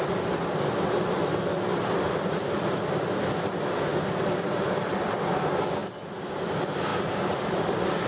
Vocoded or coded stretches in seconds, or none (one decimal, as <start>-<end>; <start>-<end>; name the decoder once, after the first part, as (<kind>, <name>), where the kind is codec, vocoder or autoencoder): 3.9-5.1 (vocoder, BigVGAN v2); 6.9-8.1